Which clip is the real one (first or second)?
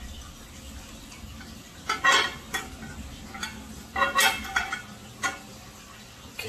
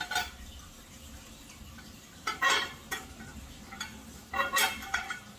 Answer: first